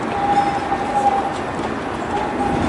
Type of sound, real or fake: real